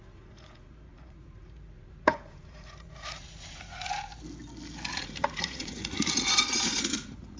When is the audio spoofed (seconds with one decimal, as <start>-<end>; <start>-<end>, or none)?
0.0-4.1; 4.9-7.4

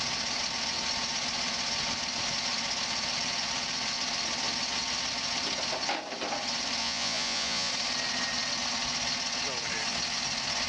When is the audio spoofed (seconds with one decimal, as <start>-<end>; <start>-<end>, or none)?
6.8-7.7

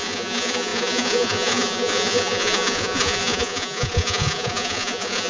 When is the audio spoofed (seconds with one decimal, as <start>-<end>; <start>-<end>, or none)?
0.0-5.3